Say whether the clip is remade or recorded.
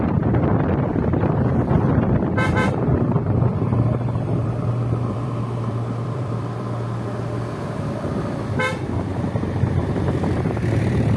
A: remade